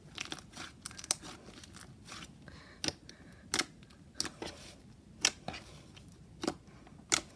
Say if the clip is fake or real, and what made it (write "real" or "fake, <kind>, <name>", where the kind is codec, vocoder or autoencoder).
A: real